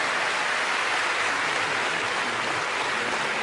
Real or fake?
real